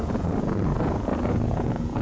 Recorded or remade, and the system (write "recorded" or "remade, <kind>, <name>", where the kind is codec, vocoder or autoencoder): remade, vocoder, Vocos